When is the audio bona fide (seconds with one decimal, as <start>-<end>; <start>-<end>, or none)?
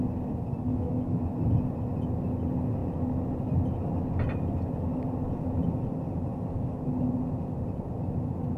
0.0-0.7; 1.2-8.6